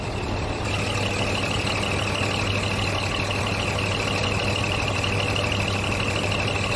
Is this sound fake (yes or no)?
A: no